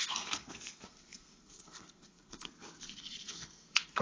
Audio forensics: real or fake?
fake